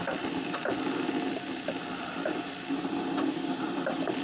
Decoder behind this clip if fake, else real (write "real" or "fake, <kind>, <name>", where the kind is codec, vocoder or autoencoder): fake, vocoder, BigVGAN v2